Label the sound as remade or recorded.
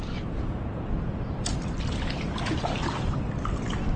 recorded